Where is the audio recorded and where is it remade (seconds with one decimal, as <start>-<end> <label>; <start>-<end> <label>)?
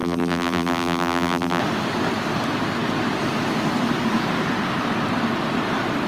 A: 0.0-1.6 remade; 1.6-6.1 recorded